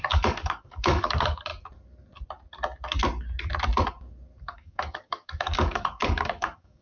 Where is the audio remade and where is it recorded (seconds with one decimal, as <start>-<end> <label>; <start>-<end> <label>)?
0.0-1.5 remade; 1.5-4.4 recorded; 4.4-6.8 remade